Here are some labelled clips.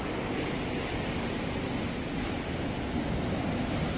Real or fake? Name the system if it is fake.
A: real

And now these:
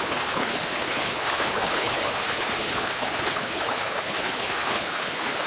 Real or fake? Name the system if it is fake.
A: fake, codec, HILCodec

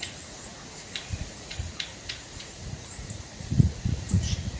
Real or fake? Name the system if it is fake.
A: fake, vocoder, Vocos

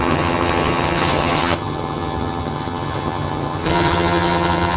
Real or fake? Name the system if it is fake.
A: fake, vocoder, HiFi-GAN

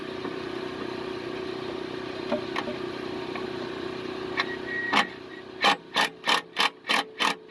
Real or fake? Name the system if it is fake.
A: real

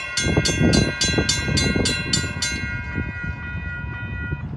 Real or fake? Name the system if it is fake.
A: real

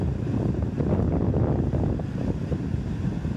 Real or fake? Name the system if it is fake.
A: real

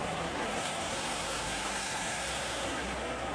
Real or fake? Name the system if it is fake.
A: fake, codec, SNAC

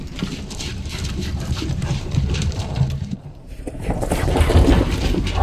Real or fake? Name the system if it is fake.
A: fake, vocoder, BigVGAN v2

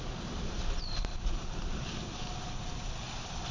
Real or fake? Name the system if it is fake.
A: real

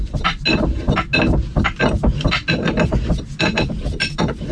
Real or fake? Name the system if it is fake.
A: real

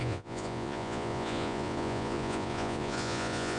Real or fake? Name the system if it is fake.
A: fake, vocoder, Vocos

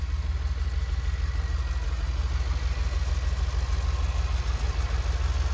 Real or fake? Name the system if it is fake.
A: real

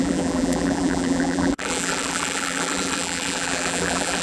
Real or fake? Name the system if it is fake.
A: fake, vocoder, BigVGAN v2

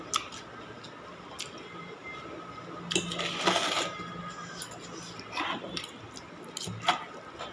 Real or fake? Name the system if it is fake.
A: real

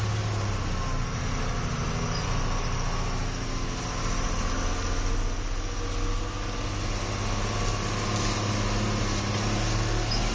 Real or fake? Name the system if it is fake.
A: real